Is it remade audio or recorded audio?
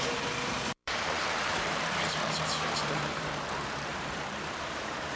remade